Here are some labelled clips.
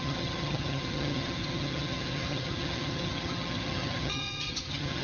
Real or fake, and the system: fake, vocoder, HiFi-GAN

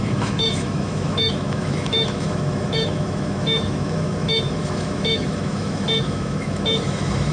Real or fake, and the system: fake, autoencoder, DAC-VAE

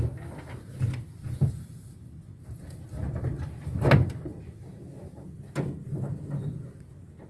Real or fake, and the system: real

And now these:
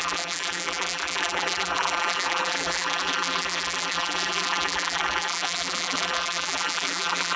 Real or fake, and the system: fake, vocoder, BigVGAN v2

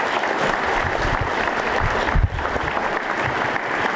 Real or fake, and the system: real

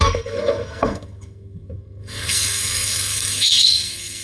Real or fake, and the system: fake, codec, SNAC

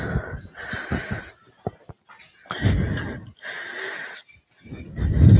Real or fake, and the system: real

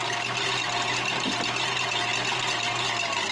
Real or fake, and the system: real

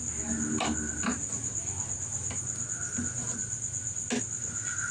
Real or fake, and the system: real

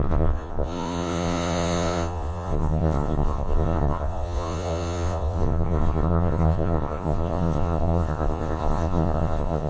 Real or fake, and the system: fake, vocoder, Vocos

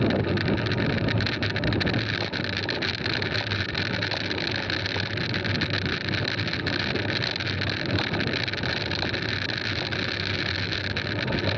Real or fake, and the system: real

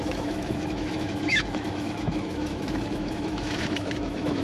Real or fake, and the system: fake, autoencoder, DAC-VAE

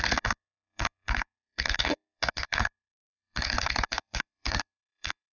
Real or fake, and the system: fake, codec, SNAC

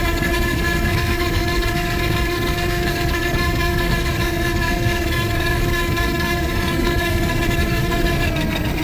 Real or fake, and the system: fake, codec, SNAC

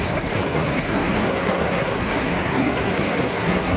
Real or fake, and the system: fake, codec, SNAC